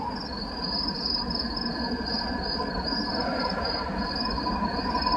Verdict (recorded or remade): recorded